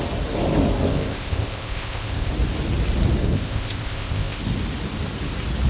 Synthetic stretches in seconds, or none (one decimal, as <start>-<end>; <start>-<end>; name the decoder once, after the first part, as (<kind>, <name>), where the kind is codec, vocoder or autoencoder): 0.9-2.3 (codec, ZipCodec); 3.2-4.4